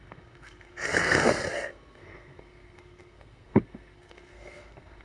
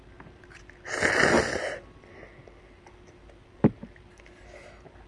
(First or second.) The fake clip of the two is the first